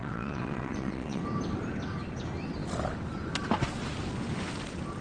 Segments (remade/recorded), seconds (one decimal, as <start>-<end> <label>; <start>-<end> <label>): 0.0-1.2 remade; 1.2-5.0 recorded